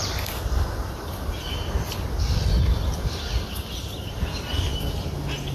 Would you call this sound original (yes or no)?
yes